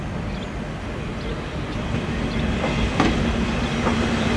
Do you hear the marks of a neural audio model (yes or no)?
no